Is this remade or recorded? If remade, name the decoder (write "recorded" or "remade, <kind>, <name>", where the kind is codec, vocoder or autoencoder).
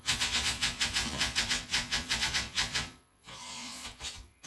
remade, vocoder, Vocos